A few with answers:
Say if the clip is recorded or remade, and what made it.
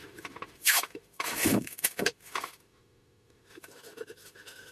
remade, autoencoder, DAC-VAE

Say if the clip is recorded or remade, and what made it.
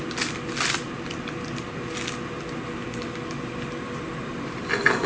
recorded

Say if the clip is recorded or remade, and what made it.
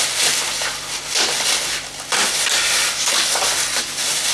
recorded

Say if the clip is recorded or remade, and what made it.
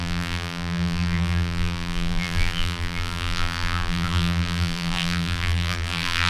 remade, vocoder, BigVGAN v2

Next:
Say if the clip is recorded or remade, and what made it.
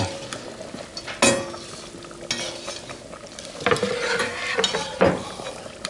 recorded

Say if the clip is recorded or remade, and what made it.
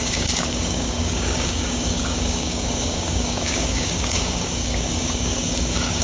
remade, codec, DAC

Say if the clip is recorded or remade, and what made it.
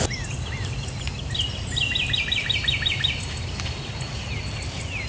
recorded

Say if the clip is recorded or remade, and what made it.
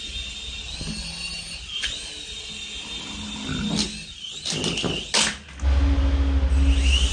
recorded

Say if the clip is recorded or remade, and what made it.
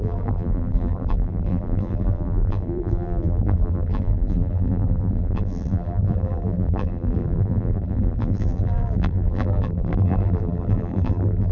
remade, vocoder, BigVGAN v2